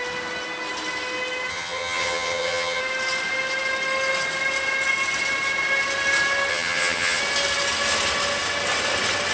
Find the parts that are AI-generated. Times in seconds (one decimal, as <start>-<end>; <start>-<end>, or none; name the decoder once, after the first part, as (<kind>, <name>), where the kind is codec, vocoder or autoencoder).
1.5-2.8 (vocoder, HiFi-GAN); 6.5-7.2